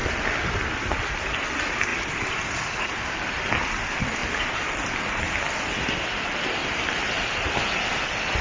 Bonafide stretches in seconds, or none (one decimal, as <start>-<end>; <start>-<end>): 0.0-4.2; 5.2-6.6; 7.6-8.4